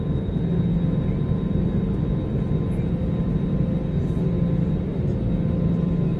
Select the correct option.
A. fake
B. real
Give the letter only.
B